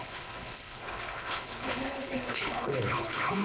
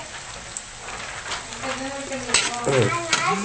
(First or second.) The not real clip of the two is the first